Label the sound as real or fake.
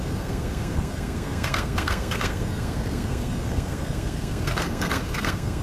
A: fake